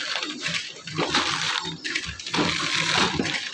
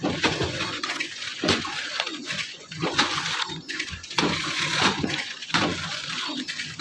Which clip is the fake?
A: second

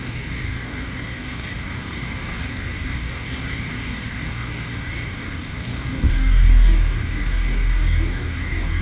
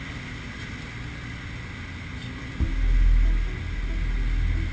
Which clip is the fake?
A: first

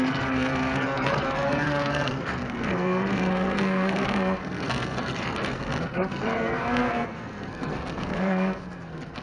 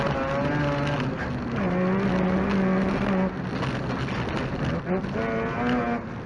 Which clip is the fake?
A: first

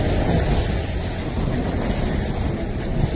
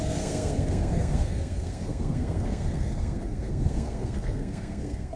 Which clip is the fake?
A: second